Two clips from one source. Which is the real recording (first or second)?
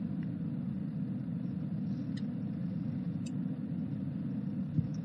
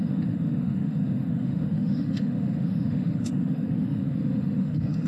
first